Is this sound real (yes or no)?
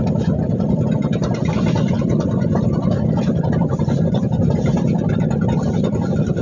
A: no